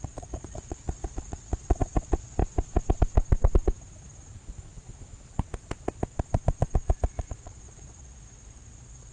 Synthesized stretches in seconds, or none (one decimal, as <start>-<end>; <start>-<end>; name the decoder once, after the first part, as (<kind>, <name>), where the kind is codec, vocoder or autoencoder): 0.0-2.4 (vocoder, Vocos); 6.2-9.1